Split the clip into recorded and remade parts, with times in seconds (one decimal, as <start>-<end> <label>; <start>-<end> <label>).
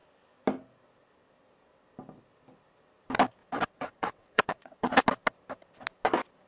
0.0-3.4 recorded; 3.4-5.0 remade; 5.0-6.5 recorded